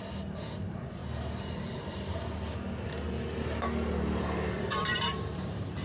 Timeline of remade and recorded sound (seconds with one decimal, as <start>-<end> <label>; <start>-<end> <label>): 0.0-0.6 recorded; 0.6-1.0 remade; 1.0-4.2 recorded; 4.2-5.8 remade